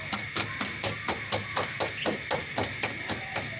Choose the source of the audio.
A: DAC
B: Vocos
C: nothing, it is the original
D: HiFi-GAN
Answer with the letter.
C